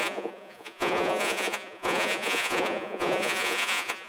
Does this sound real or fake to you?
fake